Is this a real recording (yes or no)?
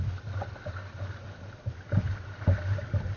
yes